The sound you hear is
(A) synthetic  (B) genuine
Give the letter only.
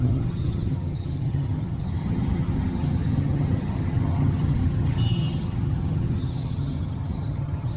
A